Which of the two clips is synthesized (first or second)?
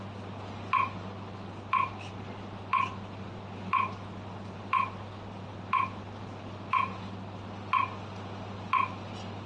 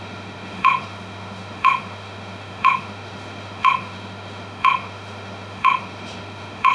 second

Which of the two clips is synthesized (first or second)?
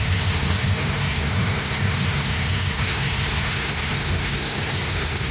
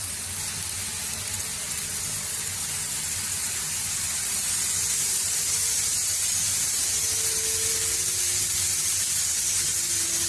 first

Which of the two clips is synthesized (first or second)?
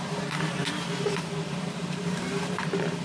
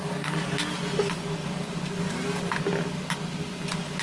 first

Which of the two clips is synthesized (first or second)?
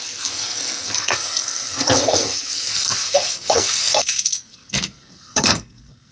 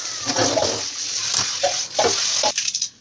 first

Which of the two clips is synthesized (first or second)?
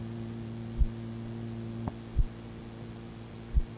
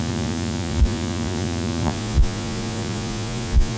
second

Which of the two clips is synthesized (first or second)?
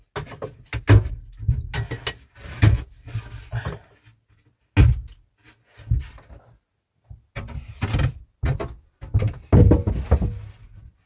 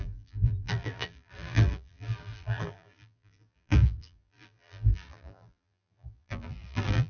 second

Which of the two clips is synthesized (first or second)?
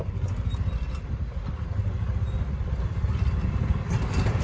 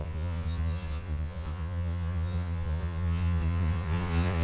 second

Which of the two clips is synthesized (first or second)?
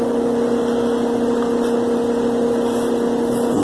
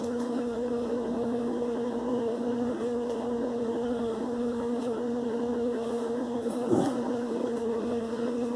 second